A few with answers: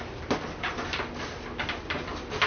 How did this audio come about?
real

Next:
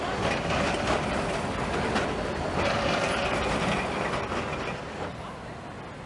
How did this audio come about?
real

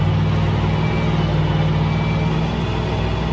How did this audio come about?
real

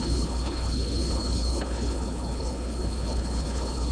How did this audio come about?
fake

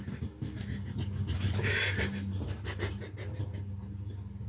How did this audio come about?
real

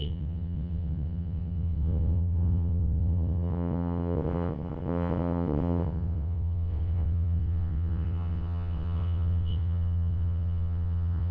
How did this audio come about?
fake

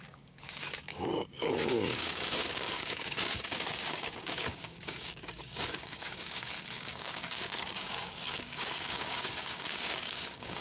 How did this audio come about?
fake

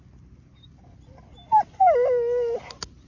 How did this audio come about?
real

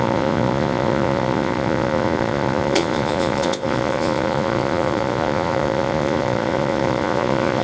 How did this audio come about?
fake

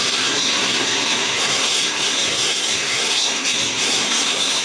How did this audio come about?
fake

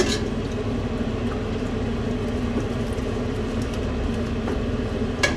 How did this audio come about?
real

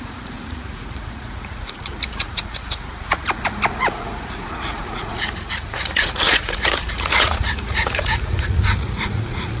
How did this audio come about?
fake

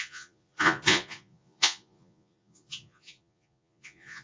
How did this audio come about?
fake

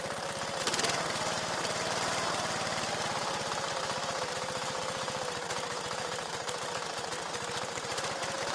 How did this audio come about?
fake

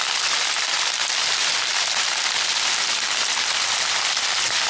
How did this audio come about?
real